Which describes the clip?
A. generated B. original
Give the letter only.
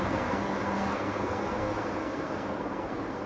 A